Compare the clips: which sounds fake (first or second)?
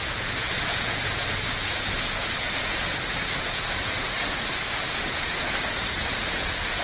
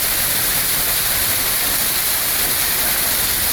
first